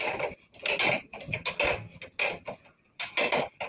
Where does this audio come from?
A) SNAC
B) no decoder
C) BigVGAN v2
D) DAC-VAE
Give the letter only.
B